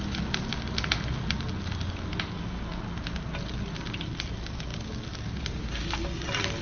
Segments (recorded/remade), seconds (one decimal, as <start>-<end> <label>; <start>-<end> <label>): 0.0-6.6 recorded